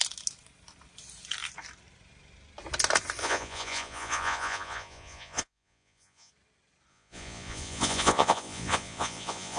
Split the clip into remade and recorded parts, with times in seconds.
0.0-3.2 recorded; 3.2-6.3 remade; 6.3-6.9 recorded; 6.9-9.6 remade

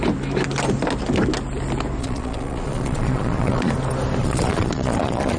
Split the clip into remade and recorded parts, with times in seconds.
0.0-2.0 recorded; 2.0-3.7 remade; 3.7-4.2 recorded; 4.2-5.4 remade